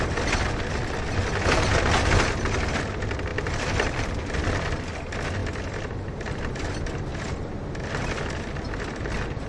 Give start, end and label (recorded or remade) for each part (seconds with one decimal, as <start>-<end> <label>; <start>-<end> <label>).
0.0-3.3 recorded; 3.3-4.5 remade; 4.5-5.4 recorded; 5.4-5.9 remade; 5.9-9.5 recorded